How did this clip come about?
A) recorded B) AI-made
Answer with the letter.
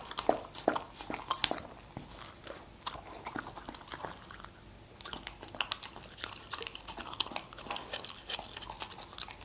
A